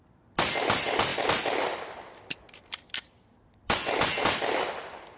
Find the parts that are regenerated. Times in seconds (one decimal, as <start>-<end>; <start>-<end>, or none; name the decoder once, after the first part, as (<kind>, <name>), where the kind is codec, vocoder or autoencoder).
none